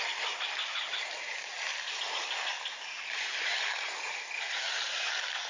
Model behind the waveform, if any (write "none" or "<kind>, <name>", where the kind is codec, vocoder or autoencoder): none